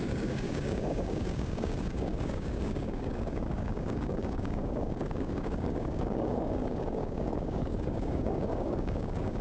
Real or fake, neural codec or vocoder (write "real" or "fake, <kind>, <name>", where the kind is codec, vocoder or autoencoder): fake, codec, DAC